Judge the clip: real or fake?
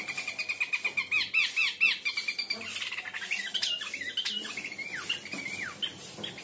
real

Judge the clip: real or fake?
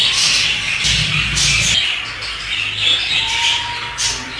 real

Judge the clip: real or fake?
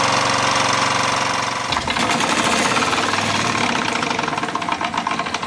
real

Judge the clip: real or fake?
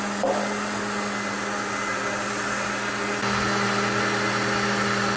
real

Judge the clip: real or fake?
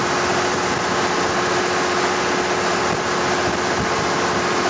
real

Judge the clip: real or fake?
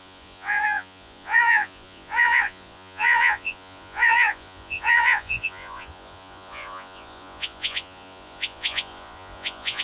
fake